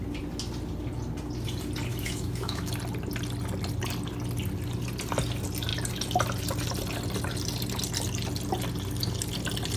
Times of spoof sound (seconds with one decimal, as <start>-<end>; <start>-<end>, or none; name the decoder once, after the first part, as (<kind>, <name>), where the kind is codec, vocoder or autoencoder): 1.9-2.7 (autoencoder, DAC-VAE)